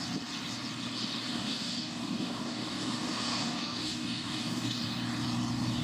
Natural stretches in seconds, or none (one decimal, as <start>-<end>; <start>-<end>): 0.0-1.3; 4.8-5.8